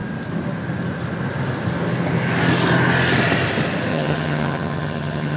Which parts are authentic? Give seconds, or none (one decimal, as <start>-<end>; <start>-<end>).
0.0-3.9